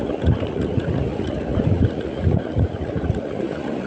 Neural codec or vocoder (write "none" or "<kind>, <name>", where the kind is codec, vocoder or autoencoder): vocoder, Vocos